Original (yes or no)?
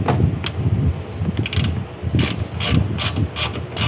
yes